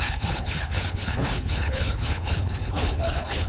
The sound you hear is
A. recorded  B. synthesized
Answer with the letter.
B